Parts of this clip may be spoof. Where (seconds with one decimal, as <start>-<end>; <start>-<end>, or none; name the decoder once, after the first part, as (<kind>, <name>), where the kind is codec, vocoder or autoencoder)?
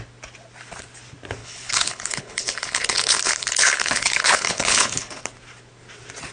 1.4-5.2 (codec, HILCodec)